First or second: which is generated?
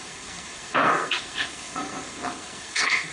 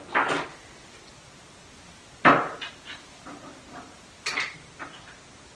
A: first